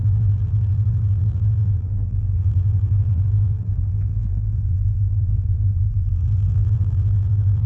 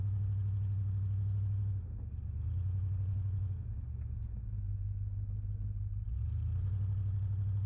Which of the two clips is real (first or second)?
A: second